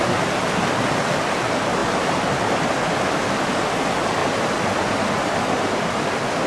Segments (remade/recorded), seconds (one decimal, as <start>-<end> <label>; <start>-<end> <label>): 0.0-6.5 recorded